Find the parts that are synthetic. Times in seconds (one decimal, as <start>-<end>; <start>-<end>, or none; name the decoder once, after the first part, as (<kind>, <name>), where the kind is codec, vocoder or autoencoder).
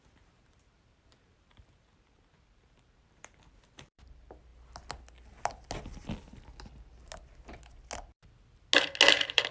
0.0-4.5 (vocoder, BigVGAN v2); 9.1-9.5